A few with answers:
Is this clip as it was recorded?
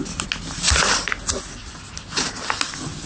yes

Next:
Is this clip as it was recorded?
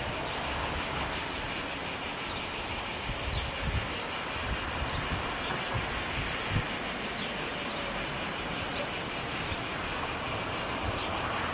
yes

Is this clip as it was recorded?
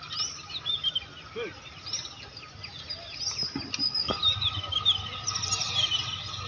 yes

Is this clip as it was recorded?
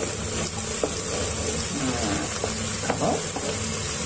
yes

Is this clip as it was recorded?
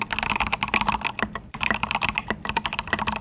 yes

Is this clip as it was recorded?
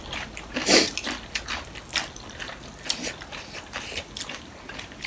yes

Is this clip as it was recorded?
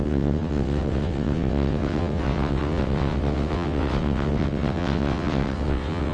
no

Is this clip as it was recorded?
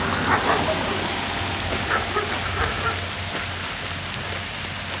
yes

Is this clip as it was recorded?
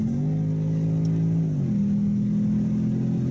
yes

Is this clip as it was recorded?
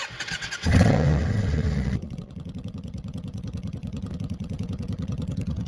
no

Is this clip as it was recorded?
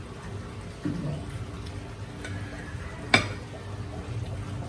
yes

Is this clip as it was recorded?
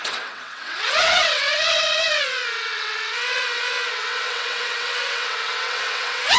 no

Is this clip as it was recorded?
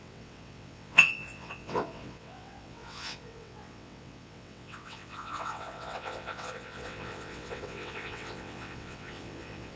no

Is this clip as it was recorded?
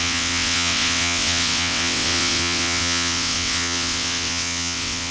no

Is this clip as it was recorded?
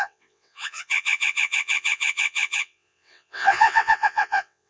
no